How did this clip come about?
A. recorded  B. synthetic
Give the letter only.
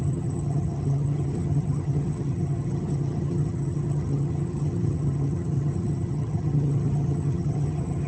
B